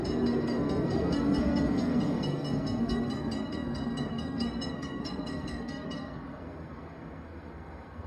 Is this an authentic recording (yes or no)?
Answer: no